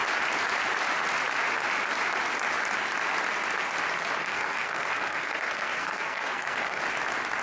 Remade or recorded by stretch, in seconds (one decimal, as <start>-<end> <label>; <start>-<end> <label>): 0.0-4.2 recorded; 4.2-6.8 remade; 6.8-7.4 recorded